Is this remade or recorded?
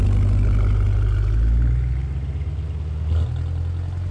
recorded